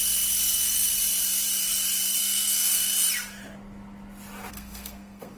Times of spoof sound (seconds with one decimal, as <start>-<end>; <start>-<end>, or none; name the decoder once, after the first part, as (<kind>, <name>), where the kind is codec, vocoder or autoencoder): 0.5-0.9 (codec, SNAC); 2.2-2.9; 4.5-5.4